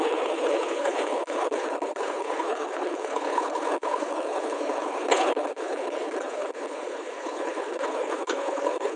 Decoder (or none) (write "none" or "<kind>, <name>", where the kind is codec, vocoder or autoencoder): codec, HILCodec